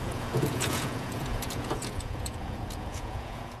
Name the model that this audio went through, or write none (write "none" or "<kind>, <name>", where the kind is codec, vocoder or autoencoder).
vocoder, Vocos